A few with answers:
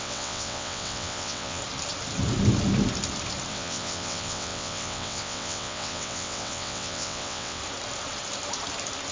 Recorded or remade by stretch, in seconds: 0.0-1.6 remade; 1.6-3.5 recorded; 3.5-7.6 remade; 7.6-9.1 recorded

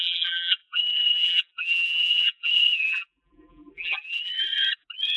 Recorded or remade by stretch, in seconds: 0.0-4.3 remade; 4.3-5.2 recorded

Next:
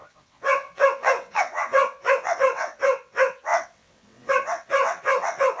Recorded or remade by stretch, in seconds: 0.0-5.6 remade

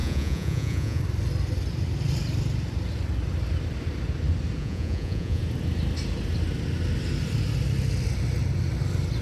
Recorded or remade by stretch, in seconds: 0.0-1.0 remade; 1.0-4.6 recorded; 4.6-5.4 remade; 5.4-9.2 recorded

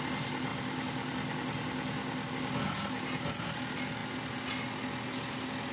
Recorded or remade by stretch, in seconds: 0.0-5.7 recorded